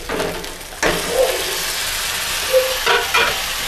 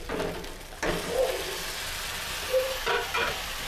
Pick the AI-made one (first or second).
second